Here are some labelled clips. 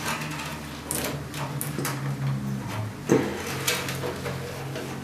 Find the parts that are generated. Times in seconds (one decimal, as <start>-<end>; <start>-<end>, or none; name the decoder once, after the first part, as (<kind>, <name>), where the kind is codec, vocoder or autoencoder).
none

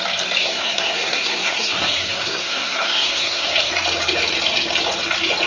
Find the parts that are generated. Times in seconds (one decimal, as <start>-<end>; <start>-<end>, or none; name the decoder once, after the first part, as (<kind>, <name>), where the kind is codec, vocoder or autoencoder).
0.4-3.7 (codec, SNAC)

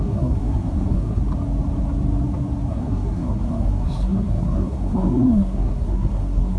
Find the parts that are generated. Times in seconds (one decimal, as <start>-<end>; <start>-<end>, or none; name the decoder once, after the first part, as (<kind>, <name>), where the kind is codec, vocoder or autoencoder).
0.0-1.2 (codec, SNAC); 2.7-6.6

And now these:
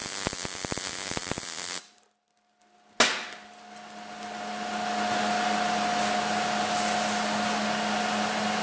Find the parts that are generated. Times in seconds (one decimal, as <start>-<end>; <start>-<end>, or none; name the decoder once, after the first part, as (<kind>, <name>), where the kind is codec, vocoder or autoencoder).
none

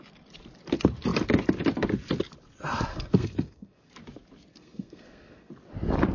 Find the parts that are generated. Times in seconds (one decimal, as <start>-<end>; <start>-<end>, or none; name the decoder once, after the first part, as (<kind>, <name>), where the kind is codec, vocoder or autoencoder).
2.9-3.9 (codec, SNAC); 4.5-5.5

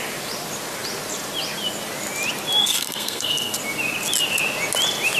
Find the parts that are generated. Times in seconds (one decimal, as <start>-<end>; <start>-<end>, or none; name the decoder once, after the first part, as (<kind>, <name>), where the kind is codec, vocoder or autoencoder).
2.6-3.6 (codec, SNAC)

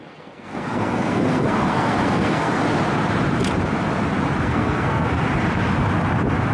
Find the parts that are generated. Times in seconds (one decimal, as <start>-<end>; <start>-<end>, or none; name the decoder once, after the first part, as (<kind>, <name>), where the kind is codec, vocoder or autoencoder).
0.0-2.6 (codec, SNAC); 4.4-5.2

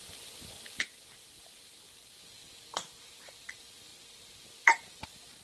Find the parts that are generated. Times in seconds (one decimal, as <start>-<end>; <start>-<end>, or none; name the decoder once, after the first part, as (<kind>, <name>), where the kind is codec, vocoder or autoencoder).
none